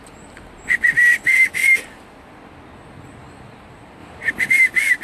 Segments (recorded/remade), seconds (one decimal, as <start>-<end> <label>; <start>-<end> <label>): 0.0-4.0 recorded; 4.0-4.5 remade; 4.5-5.0 recorded